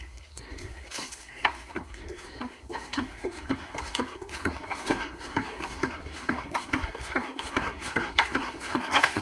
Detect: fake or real fake